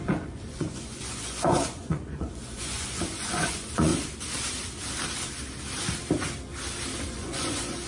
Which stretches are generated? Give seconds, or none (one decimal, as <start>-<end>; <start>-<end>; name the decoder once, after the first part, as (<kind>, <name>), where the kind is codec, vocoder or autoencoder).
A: 0.0-3.9 (vocoder, Vocos); 7.0-7.9